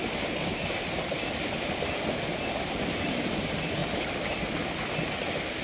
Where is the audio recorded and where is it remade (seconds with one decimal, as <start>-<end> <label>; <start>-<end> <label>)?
0.0-0.5 recorded; 0.5-3.3 remade; 3.3-5.6 recorded